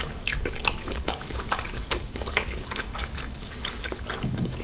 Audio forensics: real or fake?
fake